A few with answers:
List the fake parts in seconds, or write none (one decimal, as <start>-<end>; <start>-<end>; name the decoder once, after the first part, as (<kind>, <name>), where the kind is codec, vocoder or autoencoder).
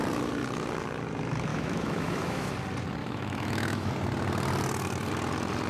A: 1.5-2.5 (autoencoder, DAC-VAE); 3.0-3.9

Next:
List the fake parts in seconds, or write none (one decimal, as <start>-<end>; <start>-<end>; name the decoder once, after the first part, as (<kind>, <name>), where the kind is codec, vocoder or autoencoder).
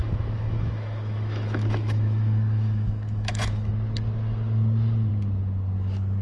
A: 0.0-3.7 (autoencoder, DAC-VAE)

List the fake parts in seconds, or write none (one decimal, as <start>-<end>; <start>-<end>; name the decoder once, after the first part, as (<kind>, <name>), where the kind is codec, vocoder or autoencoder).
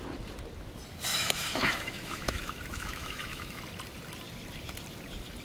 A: 1.1-3.6 (autoencoder, DAC-VAE)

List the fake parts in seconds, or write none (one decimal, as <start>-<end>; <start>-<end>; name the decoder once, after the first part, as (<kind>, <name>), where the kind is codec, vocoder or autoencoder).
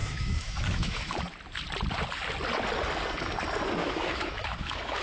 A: 0.0-1.2 (autoencoder, DAC-VAE); 3.8-5.0